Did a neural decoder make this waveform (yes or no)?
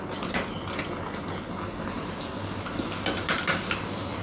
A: no